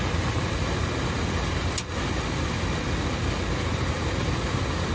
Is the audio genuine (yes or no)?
yes